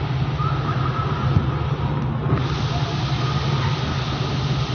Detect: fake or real real